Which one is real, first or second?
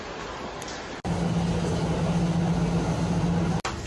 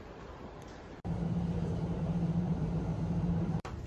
first